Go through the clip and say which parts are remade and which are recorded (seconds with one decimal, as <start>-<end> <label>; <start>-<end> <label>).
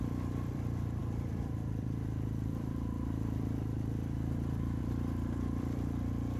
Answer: 0.0-6.4 remade